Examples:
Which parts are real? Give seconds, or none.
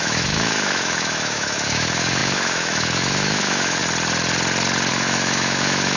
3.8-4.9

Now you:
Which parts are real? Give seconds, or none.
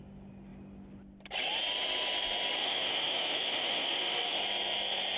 0.0-2.6; 4.4-5.2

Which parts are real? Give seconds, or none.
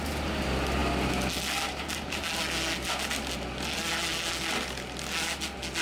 0.0-5.8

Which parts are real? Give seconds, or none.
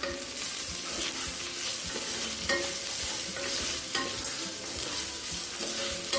0.0-6.2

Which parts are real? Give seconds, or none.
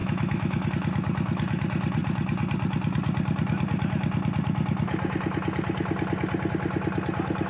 0.7-7.5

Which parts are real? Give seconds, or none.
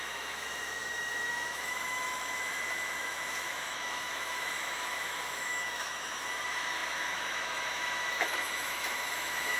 none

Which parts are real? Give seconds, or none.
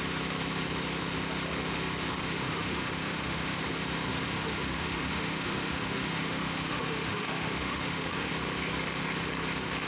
0.0-2.2; 3.6-4.1; 8.3-9.9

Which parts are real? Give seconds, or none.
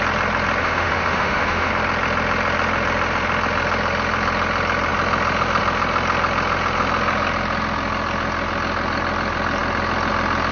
0.0-0.6; 1.7-10.5